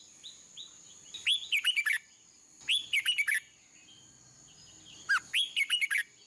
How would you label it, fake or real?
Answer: real